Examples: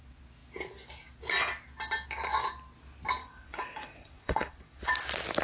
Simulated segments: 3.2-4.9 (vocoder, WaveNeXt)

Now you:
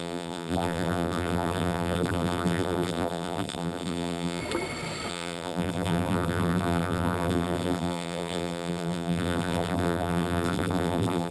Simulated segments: 0.0-4.4 (vocoder, BigVGAN v2); 5.1-11.3

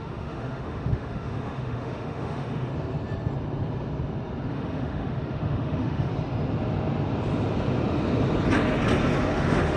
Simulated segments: 0.0-2.7 (autoencoder, DAC-VAE); 4.5-6.1; 9.3-9.8

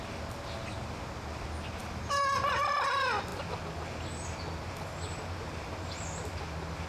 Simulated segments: none

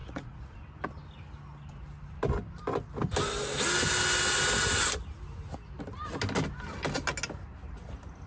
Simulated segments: 0.0-0.6 (vocoder, Vocos)

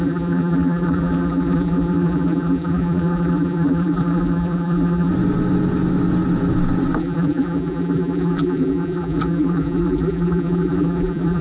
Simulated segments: 0.0-5.1 (vocoder, BigVGAN v2); 7.0-11.4